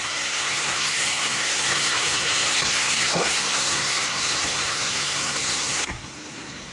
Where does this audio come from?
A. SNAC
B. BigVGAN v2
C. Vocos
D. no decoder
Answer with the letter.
A